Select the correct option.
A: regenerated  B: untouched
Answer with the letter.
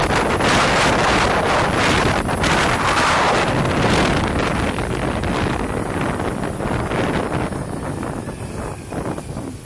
B